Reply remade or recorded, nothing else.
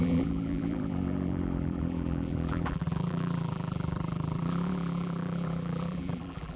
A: remade